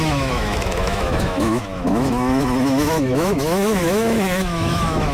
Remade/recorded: remade